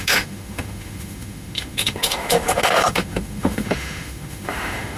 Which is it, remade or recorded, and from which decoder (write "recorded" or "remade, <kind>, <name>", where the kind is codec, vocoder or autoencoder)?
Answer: remade, autoencoder, DAC-VAE